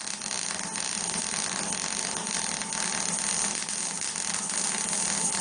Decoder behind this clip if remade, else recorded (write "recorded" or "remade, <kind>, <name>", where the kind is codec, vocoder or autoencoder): recorded